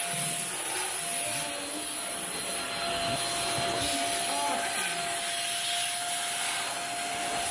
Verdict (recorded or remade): recorded